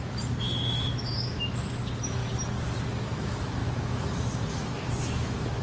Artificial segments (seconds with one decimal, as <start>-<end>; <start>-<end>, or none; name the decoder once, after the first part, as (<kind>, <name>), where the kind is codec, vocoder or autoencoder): 0.0-2.2 (autoencoder, DAC-VAE); 2.9-5.6